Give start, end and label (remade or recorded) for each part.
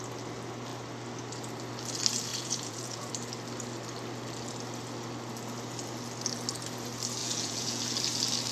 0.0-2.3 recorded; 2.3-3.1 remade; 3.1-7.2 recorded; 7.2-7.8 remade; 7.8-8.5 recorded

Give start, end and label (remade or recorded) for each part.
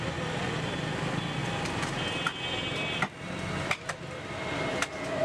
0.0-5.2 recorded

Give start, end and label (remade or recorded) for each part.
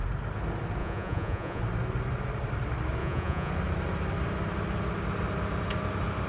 0.0-0.8 recorded; 0.8-1.6 remade; 1.6-3.0 recorded; 3.0-3.5 remade; 3.5-6.3 recorded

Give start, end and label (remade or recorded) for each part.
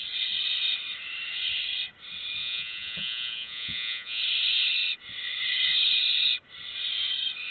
0.0-2.4 recorded; 2.4-4.2 remade; 4.2-7.5 recorded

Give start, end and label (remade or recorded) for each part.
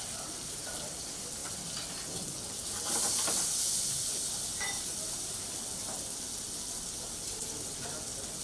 0.0-8.4 recorded